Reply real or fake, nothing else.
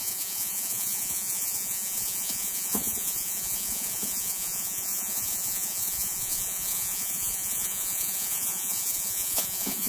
fake